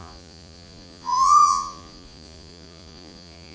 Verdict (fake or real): fake